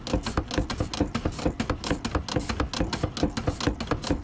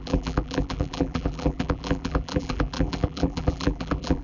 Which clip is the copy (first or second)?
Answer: second